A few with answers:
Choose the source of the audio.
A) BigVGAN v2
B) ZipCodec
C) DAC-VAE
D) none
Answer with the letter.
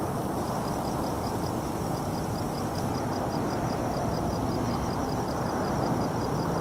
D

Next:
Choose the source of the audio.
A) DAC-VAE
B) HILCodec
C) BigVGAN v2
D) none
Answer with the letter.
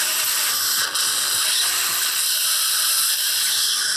D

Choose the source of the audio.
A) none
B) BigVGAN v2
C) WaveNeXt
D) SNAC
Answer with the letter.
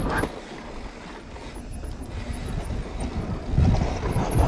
A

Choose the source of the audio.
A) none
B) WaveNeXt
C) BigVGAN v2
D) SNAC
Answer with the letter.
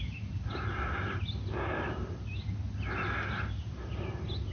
A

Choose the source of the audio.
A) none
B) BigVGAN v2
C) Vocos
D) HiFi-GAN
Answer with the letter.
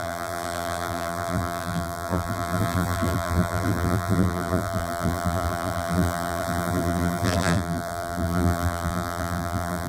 B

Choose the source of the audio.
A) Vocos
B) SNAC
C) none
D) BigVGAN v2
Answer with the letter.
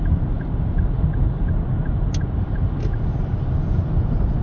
C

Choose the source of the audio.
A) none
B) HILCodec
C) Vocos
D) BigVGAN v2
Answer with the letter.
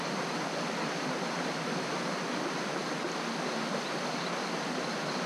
A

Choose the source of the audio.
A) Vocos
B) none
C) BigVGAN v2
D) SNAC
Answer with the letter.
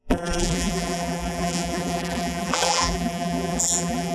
C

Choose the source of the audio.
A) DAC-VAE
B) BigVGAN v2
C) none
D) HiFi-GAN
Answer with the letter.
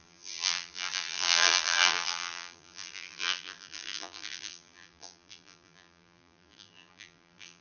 B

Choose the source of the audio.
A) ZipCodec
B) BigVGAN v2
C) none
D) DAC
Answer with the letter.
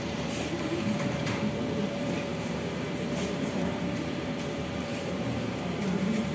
B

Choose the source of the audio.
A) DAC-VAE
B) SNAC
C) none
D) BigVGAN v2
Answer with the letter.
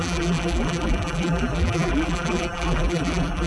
D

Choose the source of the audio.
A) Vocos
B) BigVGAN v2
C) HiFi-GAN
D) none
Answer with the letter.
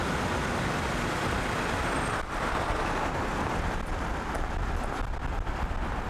D